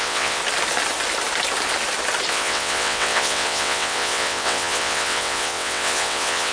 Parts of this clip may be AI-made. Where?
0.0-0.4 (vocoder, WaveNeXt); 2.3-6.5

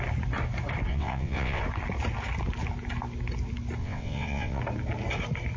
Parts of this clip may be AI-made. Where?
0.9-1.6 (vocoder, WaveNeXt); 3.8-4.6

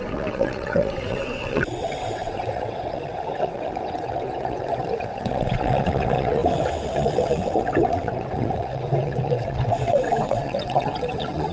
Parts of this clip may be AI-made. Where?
0.0-11.5 (vocoder, WaveNeXt)